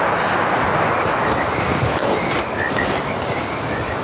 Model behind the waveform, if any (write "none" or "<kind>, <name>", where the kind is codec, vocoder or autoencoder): none